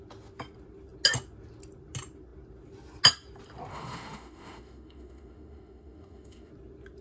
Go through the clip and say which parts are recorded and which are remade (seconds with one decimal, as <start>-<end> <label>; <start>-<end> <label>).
0.0-3.7 recorded; 3.7-6.5 remade; 6.5-7.0 recorded